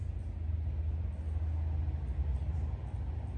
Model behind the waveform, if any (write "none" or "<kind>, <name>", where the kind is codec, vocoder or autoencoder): none